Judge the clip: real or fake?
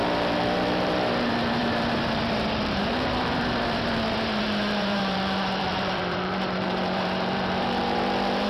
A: fake